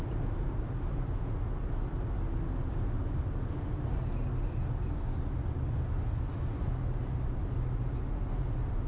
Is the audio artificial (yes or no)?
no